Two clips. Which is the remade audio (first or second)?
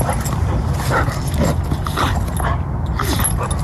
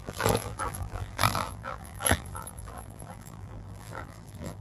second